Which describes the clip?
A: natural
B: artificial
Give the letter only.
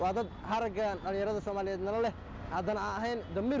A